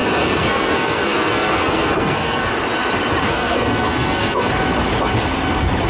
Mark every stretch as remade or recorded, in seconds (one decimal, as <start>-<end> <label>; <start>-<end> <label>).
0.0-2.5 remade; 2.5-3.2 recorded; 3.2-4.5 remade; 4.5-5.9 recorded